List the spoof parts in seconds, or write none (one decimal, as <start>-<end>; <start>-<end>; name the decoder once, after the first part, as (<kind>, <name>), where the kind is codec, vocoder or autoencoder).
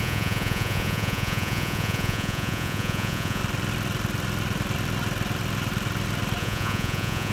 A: 0.0-3.4 (vocoder, Vocos); 6.4-7.3